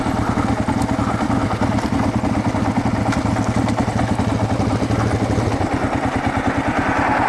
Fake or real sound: real